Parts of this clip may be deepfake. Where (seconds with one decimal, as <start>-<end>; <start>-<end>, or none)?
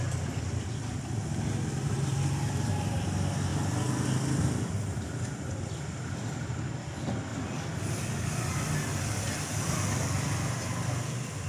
none